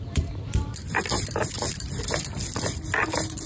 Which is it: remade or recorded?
remade